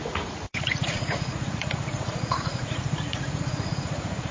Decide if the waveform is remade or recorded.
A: remade